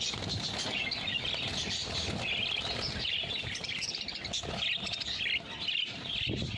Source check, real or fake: real